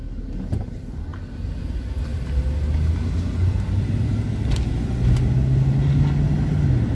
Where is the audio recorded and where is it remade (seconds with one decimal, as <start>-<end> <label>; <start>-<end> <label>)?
0.0-3.4 recorded; 3.4-4.1 remade; 4.1-6.9 recorded